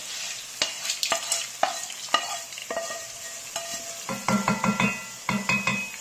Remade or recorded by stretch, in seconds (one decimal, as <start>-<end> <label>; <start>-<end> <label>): 0.0-2.6 recorded; 2.6-3.2 remade; 3.2-6.0 recorded